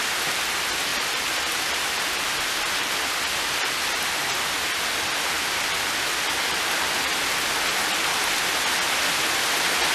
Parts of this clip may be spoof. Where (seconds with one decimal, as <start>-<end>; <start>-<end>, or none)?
0.9-3.1; 6.4-7.1